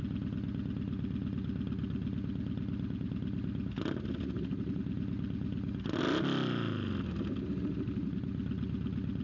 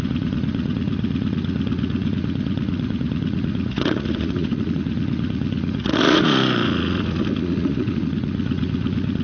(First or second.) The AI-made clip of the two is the second